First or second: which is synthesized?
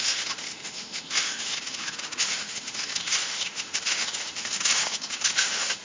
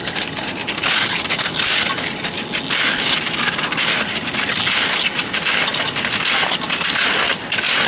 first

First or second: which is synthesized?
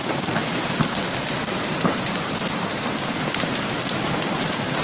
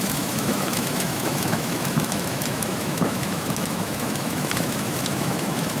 second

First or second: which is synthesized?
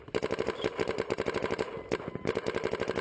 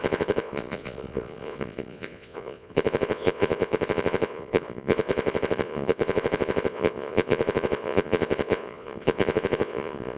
second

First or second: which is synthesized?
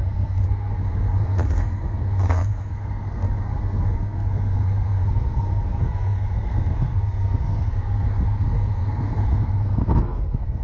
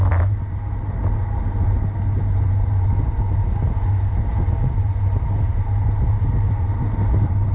first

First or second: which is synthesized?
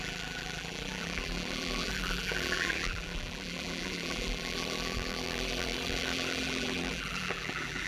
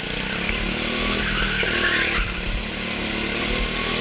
first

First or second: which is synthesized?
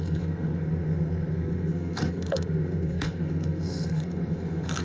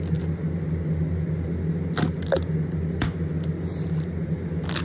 first